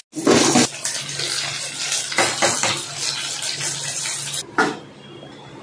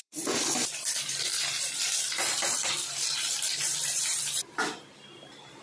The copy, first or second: second